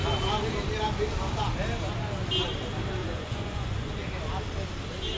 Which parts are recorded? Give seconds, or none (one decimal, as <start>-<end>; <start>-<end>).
0.0-3.0; 3.9-5.2